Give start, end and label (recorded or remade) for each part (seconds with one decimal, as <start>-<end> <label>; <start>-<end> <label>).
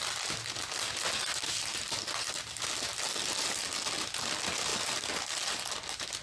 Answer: 0.0-6.2 recorded